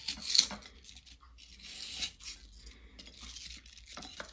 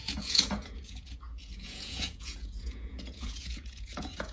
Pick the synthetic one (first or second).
second